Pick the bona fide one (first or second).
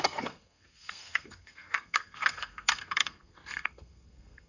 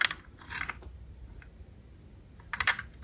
second